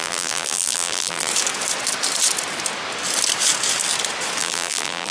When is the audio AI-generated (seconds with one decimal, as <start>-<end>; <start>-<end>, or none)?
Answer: 0.0-1.3; 4.4-5.1